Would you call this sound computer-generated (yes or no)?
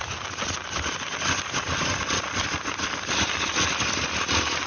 no